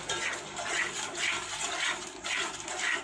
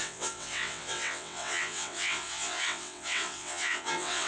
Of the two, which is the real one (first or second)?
first